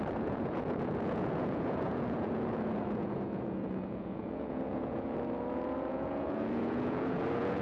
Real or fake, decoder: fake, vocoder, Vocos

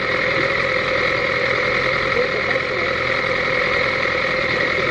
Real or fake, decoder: real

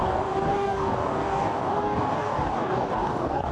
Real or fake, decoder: fake, codec, DAC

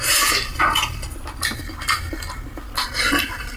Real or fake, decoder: real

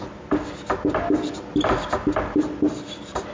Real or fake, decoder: real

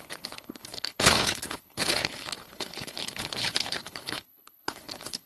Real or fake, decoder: fake, codec, HILCodec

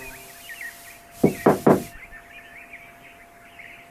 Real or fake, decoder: real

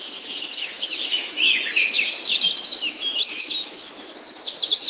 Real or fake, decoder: fake, autoencoder, DAC-VAE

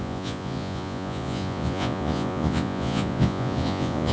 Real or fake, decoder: fake, vocoder, Vocos